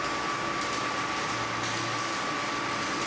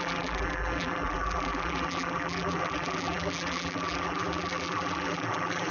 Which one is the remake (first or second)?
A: second